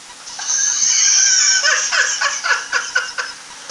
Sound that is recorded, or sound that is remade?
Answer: recorded